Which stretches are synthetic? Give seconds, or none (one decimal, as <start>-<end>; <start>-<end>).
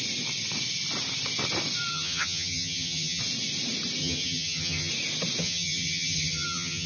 1.9-3.2; 4.0-4.9; 5.4-6.9